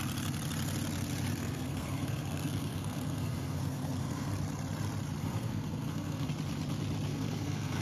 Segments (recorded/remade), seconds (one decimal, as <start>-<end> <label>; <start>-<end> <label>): 0.0-1.4 recorded; 1.4-4.3 remade; 4.3-5.2 recorded; 5.2-6.3 remade; 6.3-7.1 recorded; 7.1-7.8 remade